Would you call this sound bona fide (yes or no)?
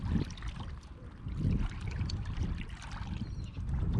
yes